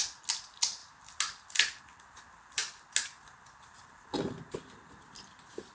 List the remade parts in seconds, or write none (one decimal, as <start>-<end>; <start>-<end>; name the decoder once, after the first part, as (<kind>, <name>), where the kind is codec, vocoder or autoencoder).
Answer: none